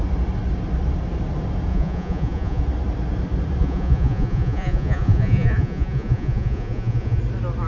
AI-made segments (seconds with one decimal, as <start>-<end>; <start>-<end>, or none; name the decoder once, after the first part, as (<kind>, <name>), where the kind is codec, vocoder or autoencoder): 1.7-2.6 (vocoder, Vocos); 3.6-7.2